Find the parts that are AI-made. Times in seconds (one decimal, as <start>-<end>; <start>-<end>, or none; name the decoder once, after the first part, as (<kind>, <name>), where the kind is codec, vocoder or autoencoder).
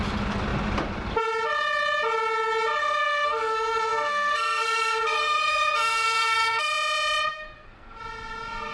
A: 2.8-6.7 (codec, SNAC); 7.3-8.0